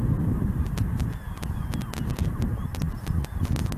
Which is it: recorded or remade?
recorded